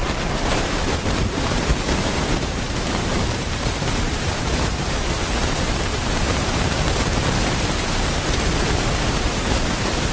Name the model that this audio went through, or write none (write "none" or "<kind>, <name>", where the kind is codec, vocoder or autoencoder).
vocoder, BigVGAN v2